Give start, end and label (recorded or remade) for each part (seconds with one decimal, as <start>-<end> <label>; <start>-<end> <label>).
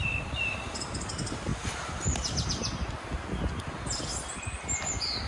0.0-5.3 recorded